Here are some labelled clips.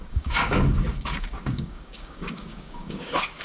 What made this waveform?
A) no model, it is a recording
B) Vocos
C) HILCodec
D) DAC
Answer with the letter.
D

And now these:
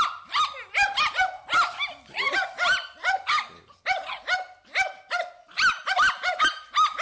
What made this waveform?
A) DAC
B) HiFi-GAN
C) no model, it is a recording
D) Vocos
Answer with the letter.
C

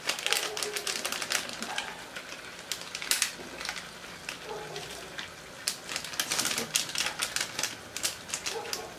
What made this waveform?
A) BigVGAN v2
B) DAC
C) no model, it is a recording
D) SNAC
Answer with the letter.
C